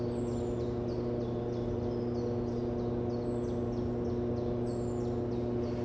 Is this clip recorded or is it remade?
recorded